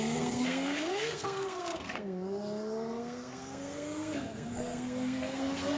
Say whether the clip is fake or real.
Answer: fake